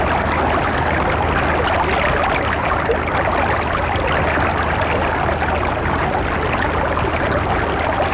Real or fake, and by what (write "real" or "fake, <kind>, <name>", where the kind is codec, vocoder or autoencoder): real